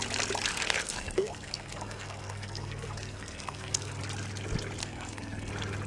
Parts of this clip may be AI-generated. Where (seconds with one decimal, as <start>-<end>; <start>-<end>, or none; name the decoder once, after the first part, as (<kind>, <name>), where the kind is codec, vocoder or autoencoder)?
0.5-4.0 (codec, SNAC); 4.8-5.5